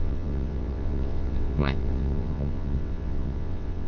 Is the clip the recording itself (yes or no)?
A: no